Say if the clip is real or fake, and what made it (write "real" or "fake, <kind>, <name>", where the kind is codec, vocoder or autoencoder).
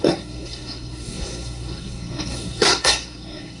fake, codec, SNAC